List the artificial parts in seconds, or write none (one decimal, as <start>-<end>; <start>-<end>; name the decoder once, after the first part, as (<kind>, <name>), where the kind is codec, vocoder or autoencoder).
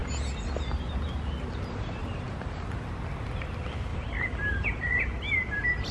2.0-2.9 (vocoder, BigVGAN v2); 3.9-5.0